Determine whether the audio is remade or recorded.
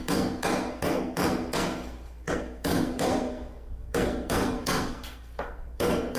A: remade